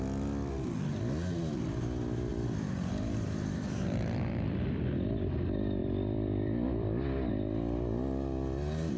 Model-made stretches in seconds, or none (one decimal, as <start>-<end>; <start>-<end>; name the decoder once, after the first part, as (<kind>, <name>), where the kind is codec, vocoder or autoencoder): 2.3-4.8 (vocoder, BigVGAN v2); 5.8-7.3